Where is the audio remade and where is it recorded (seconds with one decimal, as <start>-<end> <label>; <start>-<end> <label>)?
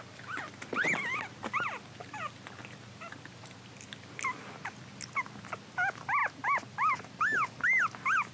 0.0-8.3 recorded